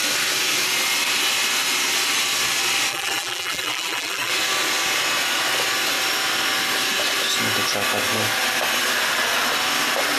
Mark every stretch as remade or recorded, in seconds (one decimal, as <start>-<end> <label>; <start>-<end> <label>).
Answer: 0.0-2.9 recorded; 2.9-4.3 remade; 4.3-10.2 recorded